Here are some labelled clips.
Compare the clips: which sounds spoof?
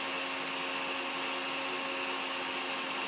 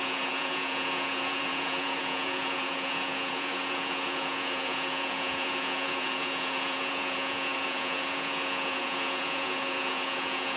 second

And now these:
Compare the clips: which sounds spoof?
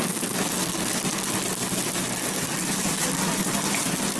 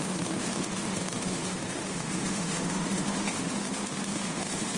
second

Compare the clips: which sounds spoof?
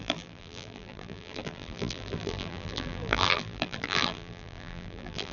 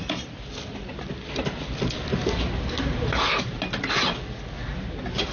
first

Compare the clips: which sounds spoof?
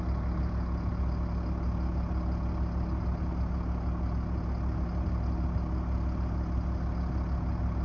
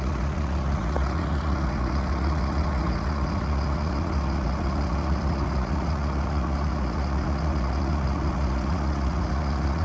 second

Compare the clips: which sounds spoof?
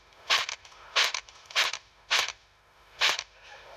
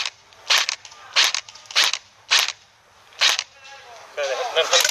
first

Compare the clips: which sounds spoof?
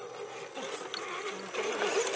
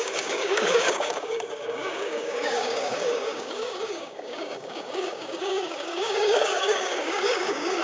second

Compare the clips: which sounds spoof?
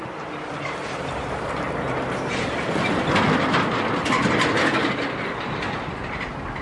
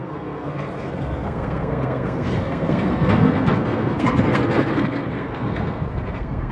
second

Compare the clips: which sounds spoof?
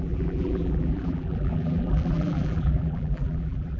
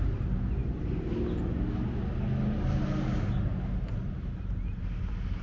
first